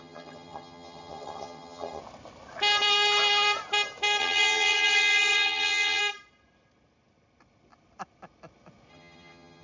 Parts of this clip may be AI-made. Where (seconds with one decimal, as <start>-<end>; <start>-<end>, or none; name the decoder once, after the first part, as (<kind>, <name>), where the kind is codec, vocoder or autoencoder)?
0.0-2.0 (vocoder, HiFi-GAN); 4.2-6.0; 8.9-9.6